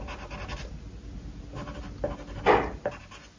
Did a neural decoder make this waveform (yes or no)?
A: no